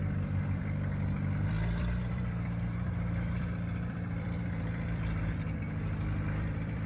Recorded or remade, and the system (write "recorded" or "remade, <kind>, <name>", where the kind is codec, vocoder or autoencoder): remade, vocoder, BigVGAN v2